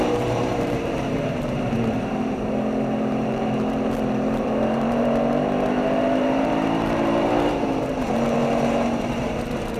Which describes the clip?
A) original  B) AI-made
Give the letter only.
B